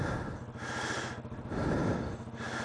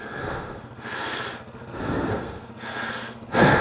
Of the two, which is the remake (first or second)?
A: second